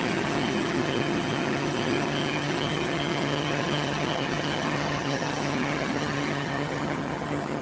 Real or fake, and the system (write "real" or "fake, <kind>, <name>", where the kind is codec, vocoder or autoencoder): fake, vocoder, HiFi-GAN